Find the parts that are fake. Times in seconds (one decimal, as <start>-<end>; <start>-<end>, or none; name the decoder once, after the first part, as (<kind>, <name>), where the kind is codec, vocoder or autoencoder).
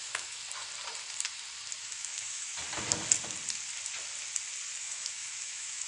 0.0-0.4 (autoencoder, DAC-VAE); 1.8-2.5; 4.8-5.9